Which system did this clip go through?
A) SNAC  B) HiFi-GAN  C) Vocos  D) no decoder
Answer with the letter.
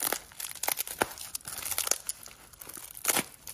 D